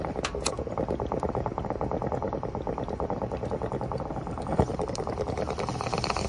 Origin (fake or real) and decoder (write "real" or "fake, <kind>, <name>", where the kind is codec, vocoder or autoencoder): real